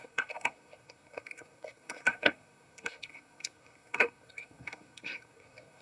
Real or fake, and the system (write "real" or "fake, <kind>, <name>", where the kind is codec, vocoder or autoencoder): fake, codec, SNAC